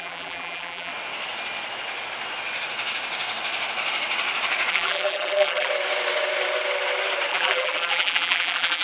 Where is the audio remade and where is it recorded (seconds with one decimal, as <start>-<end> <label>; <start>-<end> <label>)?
0.0-0.9 remade; 0.9-4.7 recorded; 4.7-5.7 remade; 5.7-7.3 recorded; 7.3-8.8 remade